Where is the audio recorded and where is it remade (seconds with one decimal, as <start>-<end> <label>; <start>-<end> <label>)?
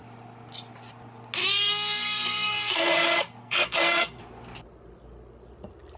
0.0-1.4 recorded; 1.4-2.9 remade; 2.9-3.4 recorded; 3.4-4.2 remade; 4.2-6.0 recorded